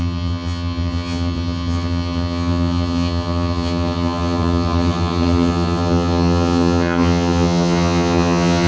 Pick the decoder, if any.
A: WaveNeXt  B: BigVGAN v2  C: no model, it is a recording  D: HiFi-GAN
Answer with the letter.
D